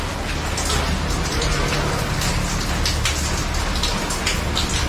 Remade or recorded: recorded